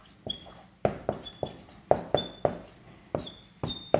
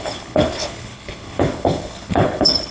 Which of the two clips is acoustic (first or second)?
first